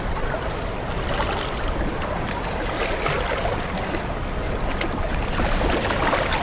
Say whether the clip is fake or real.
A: real